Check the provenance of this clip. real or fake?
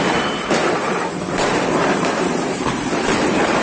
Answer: fake